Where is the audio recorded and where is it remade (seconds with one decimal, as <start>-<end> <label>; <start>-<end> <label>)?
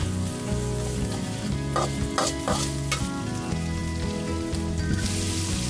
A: 0.0-5.7 recorded